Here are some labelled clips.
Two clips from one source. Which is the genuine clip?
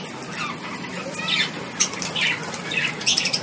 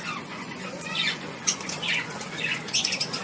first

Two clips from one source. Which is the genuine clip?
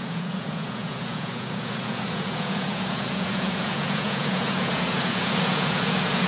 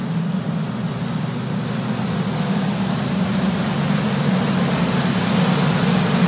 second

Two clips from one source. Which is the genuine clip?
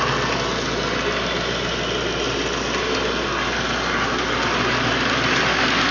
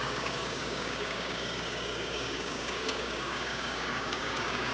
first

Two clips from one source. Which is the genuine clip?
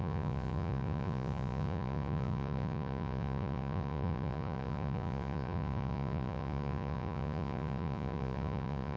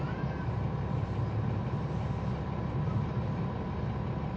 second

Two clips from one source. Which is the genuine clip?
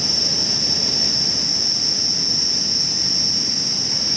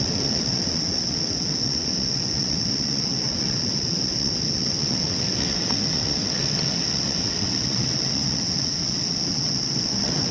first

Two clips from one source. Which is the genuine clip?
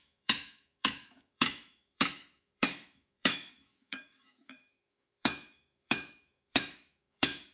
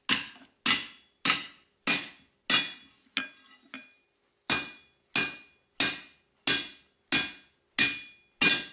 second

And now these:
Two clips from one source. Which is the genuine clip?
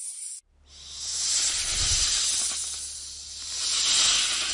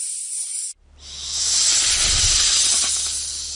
first